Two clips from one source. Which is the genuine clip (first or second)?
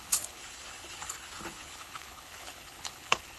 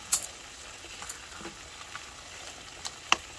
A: second